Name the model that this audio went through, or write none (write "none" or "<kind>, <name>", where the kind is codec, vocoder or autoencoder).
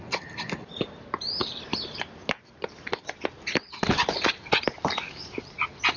none